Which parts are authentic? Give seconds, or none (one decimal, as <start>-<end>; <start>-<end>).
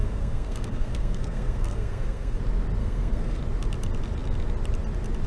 2.4-2.8; 3.4-5.3